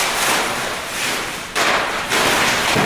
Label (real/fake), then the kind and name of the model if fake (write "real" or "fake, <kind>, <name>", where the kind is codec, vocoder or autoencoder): real